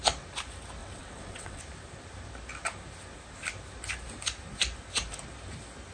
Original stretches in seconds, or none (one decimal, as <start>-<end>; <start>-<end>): 0.0-0.8; 1.6-5.9